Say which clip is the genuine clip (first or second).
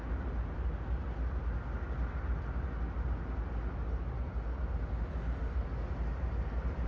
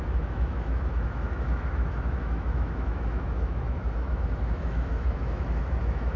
first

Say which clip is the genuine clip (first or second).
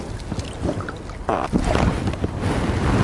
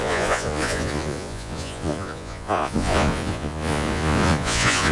first